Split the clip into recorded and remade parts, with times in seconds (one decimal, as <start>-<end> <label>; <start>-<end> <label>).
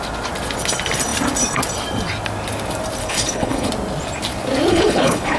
0.0-3.0 recorded; 3.0-3.7 remade; 3.7-4.7 recorded; 4.7-5.4 remade